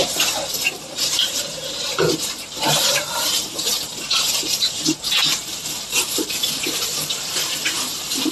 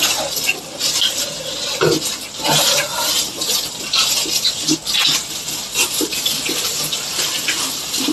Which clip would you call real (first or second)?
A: second